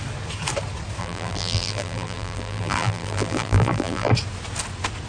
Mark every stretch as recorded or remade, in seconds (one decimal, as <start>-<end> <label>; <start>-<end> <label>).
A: 0.0-1.0 recorded; 1.0-4.1 remade; 4.1-5.1 recorded